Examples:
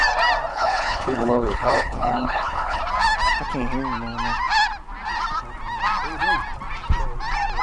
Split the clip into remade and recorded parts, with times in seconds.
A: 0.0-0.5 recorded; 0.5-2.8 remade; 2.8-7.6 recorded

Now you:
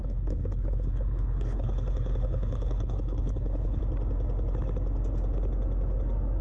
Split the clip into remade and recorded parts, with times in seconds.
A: 0.0-3.8 remade; 3.8-6.4 recorded